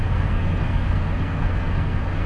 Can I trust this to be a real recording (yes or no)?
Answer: no